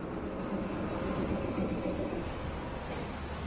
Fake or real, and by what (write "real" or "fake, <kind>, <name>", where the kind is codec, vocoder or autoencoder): real